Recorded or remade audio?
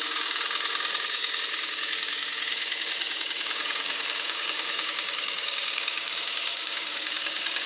remade